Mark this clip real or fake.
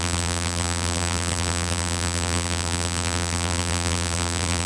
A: fake